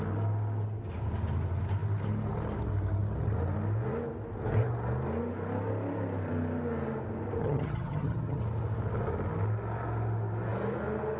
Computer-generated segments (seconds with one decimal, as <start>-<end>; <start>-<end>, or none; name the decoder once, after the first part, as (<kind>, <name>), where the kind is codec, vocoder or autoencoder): 7.4-8.4 (vocoder, HiFi-GAN)